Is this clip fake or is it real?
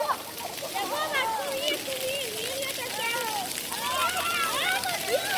real